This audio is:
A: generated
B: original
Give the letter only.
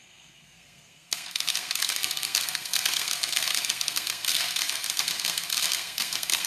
A